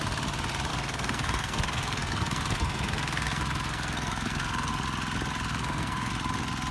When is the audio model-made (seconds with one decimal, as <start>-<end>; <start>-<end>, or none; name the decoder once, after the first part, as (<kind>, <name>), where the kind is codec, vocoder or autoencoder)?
0.7-4.7 (codec, SNAC); 5.5-6.1